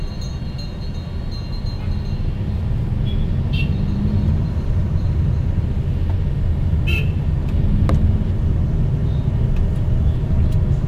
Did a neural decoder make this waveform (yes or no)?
no